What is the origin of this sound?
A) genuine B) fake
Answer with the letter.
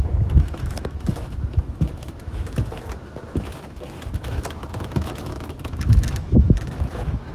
B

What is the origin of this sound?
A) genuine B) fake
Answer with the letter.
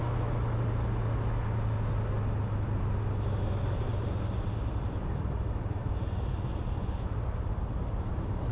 A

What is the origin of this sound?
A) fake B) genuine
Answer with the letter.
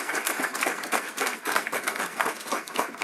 A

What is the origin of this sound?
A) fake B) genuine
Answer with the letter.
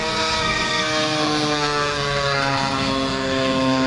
A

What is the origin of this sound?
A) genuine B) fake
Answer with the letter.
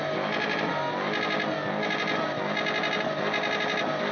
A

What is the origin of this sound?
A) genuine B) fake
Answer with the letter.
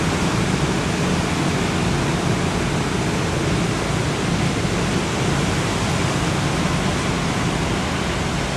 A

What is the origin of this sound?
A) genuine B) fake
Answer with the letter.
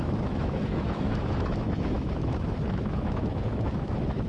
B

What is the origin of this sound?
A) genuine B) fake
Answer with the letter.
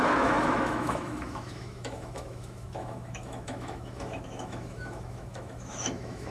B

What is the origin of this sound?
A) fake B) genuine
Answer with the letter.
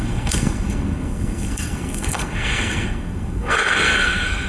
A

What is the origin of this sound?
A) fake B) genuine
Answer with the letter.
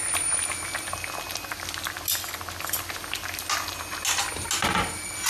B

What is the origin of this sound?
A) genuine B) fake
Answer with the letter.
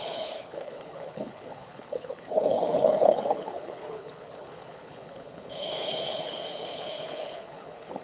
B